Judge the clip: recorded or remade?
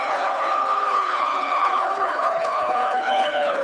remade